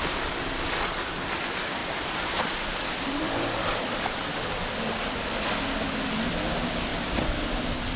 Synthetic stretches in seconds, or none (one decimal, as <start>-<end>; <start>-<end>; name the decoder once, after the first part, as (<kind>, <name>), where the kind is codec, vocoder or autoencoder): 1.8-4.8 (vocoder, BigVGAN v2); 6.9-7.6